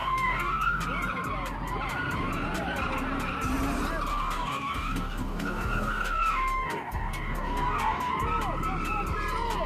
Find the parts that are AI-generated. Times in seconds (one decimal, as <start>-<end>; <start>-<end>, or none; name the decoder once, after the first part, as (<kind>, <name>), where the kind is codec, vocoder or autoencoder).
0.0-0.8 (codec, DAC); 4.1-8.1